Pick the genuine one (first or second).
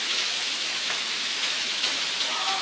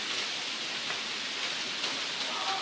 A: second